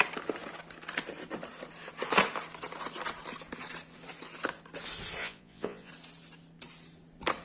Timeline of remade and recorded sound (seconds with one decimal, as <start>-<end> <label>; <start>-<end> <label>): 0.0-5.2 recorded; 5.2-5.9 remade; 5.9-7.4 recorded